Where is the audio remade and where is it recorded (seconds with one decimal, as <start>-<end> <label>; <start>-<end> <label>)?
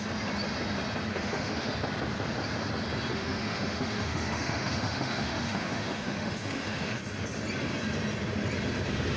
0.0-1.1 recorded; 1.1-1.7 remade; 1.7-3.1 recorded; 3.1-7.0 remade; 7.0-9.2 recorded